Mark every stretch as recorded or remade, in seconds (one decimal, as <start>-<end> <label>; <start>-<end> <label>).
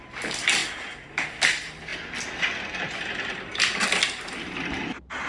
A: 0.0-0.6 remade; 0.6-1.1 recorded; 1.1-1.9 remade; 1.9-2.4 recorded; 2.4-3.5 remade; 3.5-4.3 recorded; 4.3-5.3 remade